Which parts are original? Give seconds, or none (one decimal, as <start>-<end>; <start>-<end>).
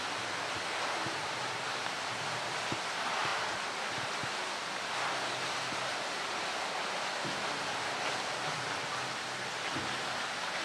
0.0-10.6